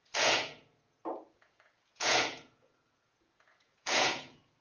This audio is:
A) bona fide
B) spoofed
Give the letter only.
B